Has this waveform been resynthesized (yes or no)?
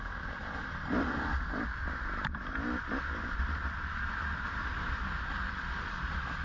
yes